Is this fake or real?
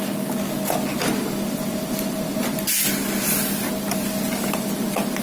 real